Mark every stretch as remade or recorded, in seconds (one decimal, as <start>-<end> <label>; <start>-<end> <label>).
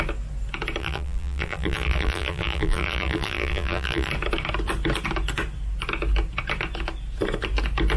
0.0-0.8 recorded; 0.8-4.1 remade; 4.1-8.0 recorded